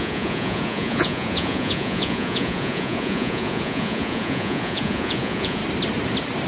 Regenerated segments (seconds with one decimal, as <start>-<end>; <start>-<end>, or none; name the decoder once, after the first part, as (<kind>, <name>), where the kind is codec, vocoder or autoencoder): 0.0-5.6 (vocoder, Vocos)